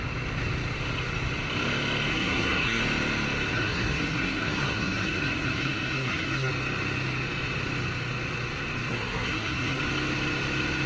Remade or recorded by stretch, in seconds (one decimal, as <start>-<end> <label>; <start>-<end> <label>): 0.0-2.1 recorded; 2.1-2.8 remade; 2.8-3.5 recorded; 3.5-6.5 remade; 6.5-8.9 recorded; 8.9-9.8 remade; 9.8-10.9 recorded